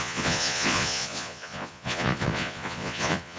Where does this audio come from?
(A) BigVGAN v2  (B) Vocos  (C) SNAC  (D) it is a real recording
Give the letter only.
B